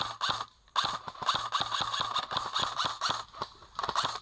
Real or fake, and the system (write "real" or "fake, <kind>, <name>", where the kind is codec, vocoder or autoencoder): real